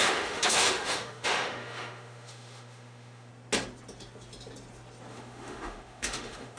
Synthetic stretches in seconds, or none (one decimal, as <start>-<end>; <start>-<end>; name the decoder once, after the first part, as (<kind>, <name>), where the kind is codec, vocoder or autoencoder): 0.0-3.3 (autoencoder, DAC-VAE); 5.1-6.6

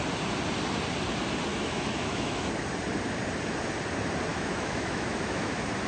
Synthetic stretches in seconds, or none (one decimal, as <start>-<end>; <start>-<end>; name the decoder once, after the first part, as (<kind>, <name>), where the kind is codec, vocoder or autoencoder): 1.5-2.5 (autoencoder, DAC-VAE); 4.3-5.5

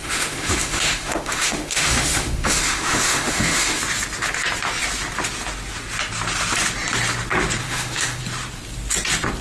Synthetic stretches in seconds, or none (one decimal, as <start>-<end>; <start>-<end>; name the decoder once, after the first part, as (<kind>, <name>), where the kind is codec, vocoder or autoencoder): 0.0-3.8 (autoencoder, DAC-VAE); 7.6-8.2